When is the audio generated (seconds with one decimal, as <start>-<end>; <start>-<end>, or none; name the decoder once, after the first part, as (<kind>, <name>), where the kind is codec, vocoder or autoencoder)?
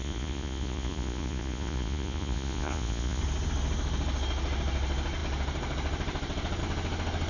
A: 0.0-3.2 (vocoder, Vocos)